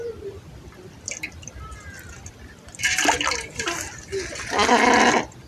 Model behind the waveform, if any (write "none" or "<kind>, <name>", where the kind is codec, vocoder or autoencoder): none